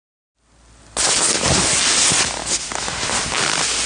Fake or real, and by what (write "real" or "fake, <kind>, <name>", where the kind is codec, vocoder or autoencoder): real